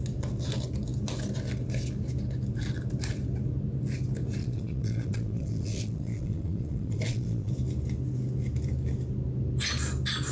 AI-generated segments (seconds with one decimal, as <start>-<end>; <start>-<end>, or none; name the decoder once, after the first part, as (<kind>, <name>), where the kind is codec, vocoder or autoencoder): 4.4-7.5 (vocoder, Vocos)